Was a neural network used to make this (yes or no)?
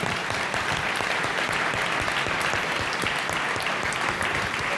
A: no